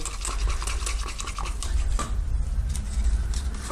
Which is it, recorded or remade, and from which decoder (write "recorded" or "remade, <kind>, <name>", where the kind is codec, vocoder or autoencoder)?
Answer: recorded